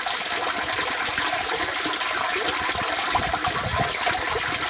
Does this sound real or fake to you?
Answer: real